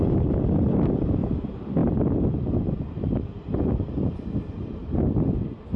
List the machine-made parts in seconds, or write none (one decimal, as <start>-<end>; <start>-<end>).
0.0-5.8